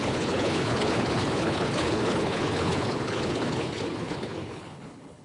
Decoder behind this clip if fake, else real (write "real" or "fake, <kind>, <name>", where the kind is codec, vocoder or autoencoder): fake, codec, HILCodec